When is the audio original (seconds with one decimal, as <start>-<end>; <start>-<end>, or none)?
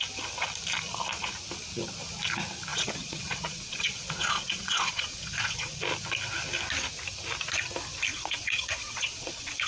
0.0-2.7; 5.8-8.1